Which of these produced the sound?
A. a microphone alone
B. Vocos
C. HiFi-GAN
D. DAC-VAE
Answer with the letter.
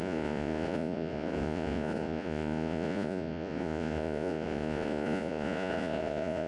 B